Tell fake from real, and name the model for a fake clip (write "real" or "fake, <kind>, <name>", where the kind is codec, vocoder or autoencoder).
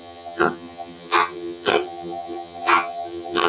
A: fake, vocoder, HiFi-GAN